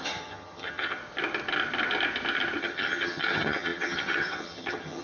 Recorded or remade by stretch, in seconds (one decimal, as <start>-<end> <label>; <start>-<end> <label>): 0.0-1.0 remade; 1.0-2.6 recorded; 2.6-5.0 remade